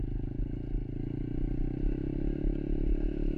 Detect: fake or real real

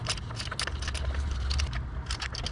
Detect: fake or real real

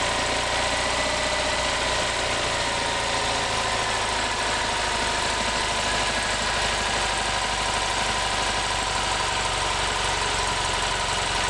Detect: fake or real real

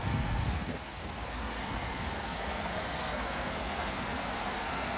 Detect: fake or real fake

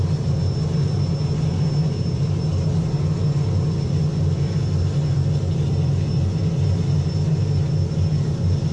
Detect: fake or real real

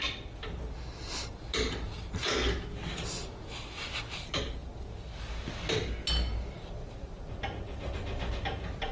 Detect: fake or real real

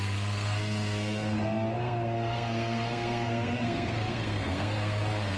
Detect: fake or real fake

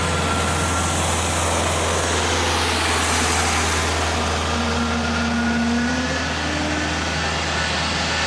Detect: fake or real real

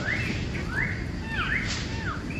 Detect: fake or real real